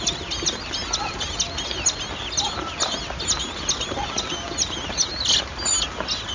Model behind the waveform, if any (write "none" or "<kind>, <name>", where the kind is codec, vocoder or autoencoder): none